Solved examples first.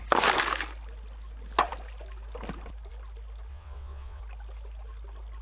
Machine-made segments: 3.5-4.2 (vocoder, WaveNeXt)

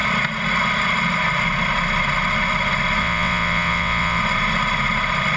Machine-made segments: 3.0-4.2 (vocoder, WaveNeXt)